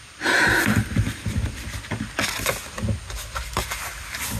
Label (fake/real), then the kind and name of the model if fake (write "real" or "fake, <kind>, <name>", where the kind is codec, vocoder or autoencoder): real